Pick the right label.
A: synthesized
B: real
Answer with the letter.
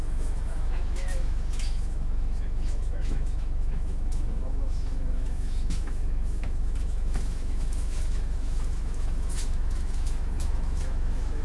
A